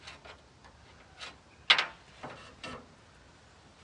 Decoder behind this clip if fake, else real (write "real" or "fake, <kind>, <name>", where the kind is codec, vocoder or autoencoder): real